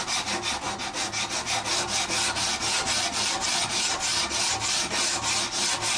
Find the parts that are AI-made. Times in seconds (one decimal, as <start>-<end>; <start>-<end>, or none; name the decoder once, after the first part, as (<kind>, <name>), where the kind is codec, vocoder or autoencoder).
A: none